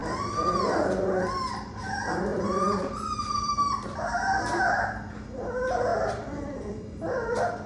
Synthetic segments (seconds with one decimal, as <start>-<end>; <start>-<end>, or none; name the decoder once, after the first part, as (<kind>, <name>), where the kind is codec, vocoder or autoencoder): 0.0-0.5 (vocoder, BigVGAN v2); 2.3-3.5; 5.9-7.3